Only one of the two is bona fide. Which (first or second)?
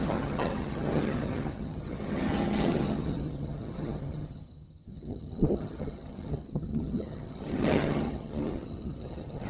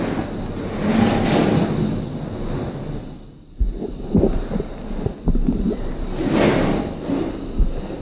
second